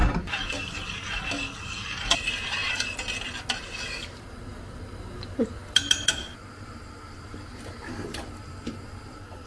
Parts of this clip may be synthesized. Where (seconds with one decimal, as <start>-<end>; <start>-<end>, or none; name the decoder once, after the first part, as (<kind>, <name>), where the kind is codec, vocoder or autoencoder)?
none